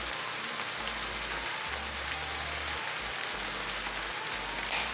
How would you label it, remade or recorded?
recorded